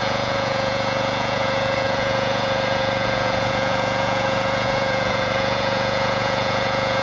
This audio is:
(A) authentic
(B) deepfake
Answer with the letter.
B